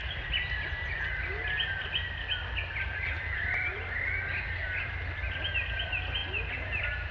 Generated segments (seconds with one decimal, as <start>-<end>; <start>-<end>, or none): 1.9-3.8

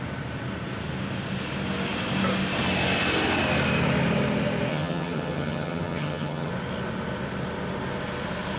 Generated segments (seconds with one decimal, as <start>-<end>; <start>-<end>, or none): 4.7-6.5

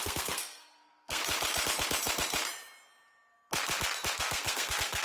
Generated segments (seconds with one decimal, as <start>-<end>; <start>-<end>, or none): 0.0-1.2; 4.2-5.0